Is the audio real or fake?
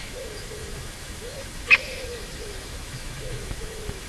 fake